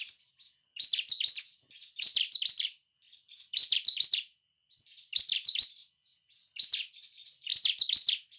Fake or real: real